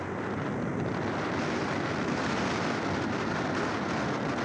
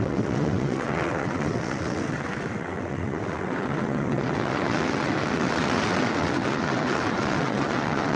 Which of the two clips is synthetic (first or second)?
second